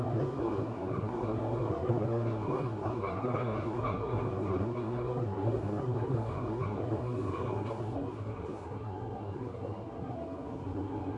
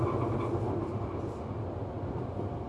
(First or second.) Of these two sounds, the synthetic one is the first